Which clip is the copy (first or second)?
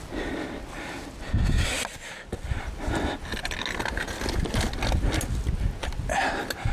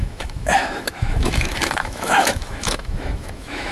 second